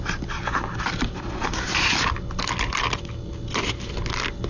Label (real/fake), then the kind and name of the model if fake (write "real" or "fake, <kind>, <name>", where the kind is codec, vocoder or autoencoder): real